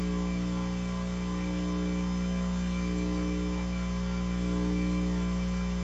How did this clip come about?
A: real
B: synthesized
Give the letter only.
A